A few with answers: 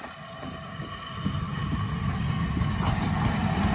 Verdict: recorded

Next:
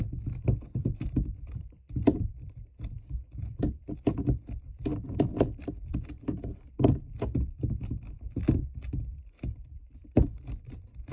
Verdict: remade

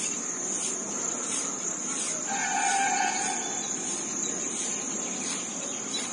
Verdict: remade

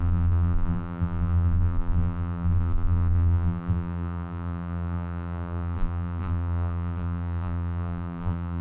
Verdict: remade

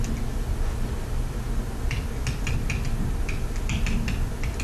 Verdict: recorded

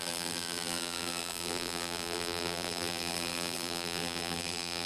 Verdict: remade